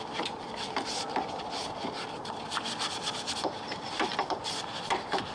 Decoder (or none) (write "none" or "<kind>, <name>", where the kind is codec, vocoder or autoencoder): vocoder, BigVGAN v2